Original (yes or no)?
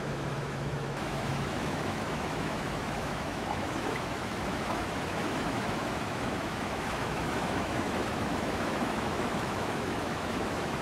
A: no